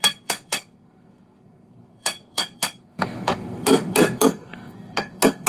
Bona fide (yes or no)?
no